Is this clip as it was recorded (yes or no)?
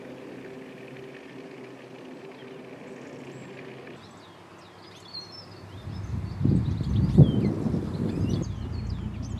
yes